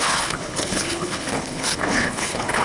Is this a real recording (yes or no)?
no